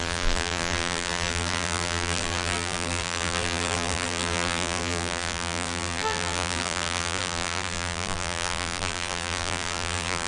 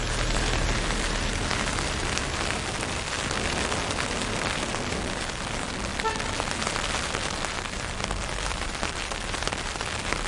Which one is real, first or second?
second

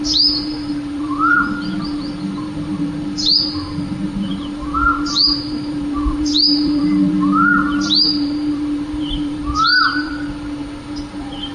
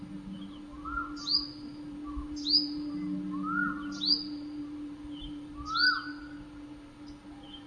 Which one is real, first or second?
second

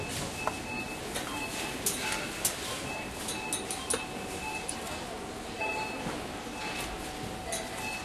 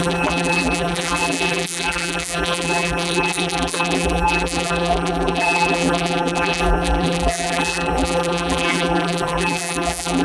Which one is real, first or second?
first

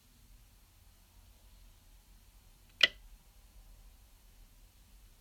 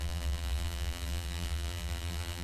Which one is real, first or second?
first